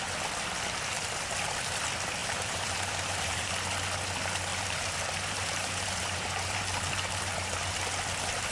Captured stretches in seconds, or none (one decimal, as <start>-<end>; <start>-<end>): 0.0-2.2; 3.5-4.5; 7.7-8.5